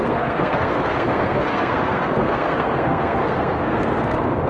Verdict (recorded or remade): remade